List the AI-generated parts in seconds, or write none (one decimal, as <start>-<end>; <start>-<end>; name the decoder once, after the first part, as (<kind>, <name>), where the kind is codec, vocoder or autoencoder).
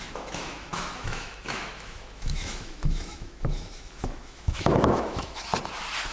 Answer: 0.0-5.5 (autoencoder, DAC-VAE)